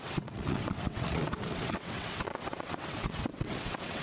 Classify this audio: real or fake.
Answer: fake